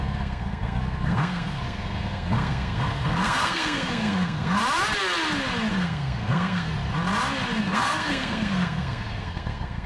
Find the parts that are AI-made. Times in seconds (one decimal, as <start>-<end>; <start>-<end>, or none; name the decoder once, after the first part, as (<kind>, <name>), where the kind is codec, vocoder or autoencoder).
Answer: 0.0-4.6 (codec, SNAC); 5.7-6.7; 7.6-9.9